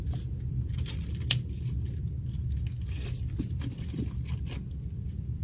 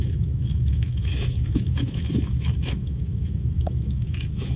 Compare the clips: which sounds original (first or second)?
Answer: first